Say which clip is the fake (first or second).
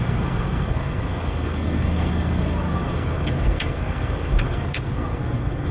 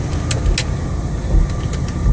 first